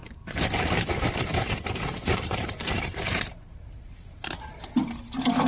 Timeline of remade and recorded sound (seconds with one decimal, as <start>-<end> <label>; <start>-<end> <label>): 0.0-0.7 remade; 0.7-1.3 recorded; 1.3-4.6 remade; 4.6-5.5 recorded